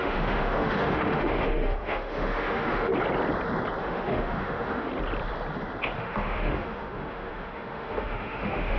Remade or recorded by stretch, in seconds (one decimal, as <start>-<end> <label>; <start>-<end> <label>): 0.0-2.9 remade; 2.9-3.8 recorded; 3.8-4.9 remade; 4.9-6.0 recorded; 6.0-8.8 remade